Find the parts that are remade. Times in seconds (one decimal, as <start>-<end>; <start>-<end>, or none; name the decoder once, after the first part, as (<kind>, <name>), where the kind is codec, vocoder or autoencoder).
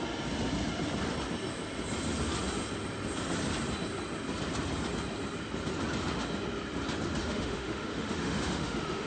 7.2-9.1 (autoencoder, DAC-VAE)